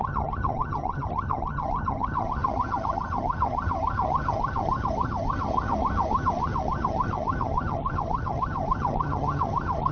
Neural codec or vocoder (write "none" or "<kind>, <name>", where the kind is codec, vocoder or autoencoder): vocoder, HiFi-GAN